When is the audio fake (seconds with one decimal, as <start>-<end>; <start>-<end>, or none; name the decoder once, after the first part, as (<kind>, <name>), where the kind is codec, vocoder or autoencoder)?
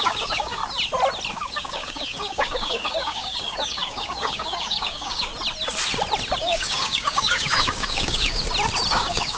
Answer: 0.0-0.6 (codec, DAC); 1.3-5.3; 6.4-8.4; 8.9-9.4